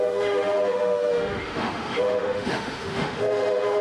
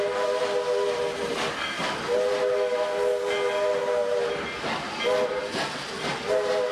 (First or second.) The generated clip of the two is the first